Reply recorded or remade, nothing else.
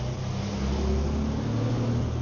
recorded